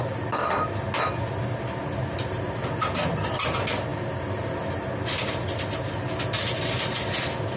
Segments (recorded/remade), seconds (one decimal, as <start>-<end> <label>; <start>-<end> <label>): 0.0-7.6 recorded